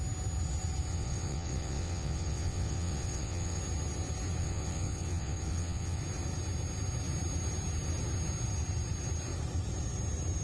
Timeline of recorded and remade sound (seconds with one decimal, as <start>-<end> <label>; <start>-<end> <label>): 0.0-0.9 recorded; 0.9-3.6 remade; 3.6-4.4 recorded; 4.4-6.0 remade; 6.0-10.4 recorded